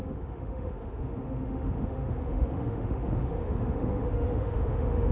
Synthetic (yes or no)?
yes